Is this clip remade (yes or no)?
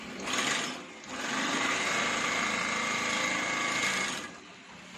no